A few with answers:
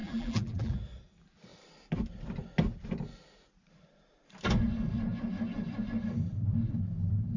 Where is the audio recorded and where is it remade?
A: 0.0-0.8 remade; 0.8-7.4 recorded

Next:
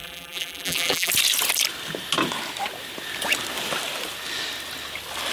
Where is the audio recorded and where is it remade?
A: 0.0-1.1 remade; 1.1-5.3 recorded

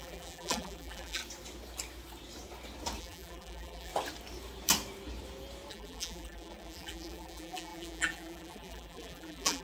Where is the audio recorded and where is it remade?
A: 0.0-1.2 remade; 1.2-3.0 recorded; 3.0-3.9 remade; 3.9-5.7 recorded; 5.7-9.6 remade

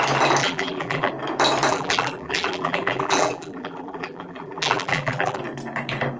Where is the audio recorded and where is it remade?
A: 0.0-0.4 recorded; 0.4-1.1 remade; 1.1-1.7 recorded; 1.7-5.4 remade; 5.4-6.2 recorded

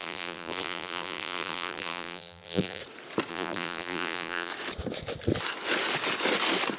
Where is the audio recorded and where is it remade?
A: 0.0-2.8 remade; 2.8-3.3 recorded; 3.3-4.5 remade; 4.5-6.8 recorded

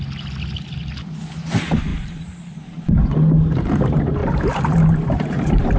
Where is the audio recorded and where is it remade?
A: 0.0-1.9 recorded; 1.9-2.6 remade; 2.6-4.2 recorded; 4.2-5.8 remade

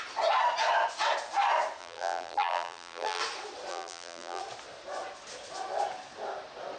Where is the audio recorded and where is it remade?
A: 0.0-1.8 recorded; 1.8-3.2 remade; 3.2-3.7 recorded; 3.7-4.4 remade; 4.4-6.8 recorded

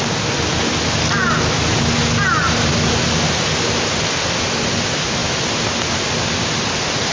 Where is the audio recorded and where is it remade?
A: 0.0-7.1 recorded